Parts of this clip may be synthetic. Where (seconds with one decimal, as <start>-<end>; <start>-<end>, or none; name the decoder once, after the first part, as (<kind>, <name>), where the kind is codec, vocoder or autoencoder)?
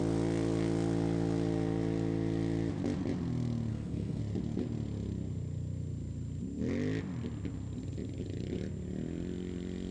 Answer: 3.7-4.2 (codec, SNAC)